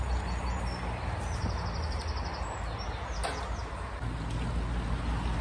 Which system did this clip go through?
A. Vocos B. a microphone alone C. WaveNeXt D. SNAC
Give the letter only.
B